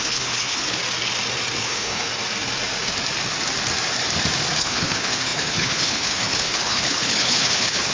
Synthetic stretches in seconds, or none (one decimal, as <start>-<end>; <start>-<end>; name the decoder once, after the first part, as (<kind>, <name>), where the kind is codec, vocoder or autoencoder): 0.0-0.8 (codec, HILCodec); 1.6-2.1; 4.5-7.9